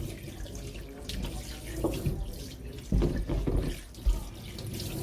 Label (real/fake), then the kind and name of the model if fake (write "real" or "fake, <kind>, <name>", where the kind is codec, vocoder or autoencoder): real